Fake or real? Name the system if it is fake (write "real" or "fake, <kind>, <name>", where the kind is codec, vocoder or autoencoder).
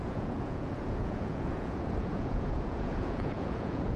fake, vocoder, Vocos